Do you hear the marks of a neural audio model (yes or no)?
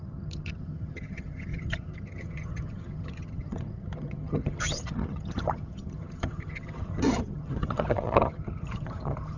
yes